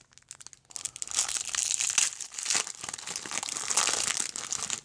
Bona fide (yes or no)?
yes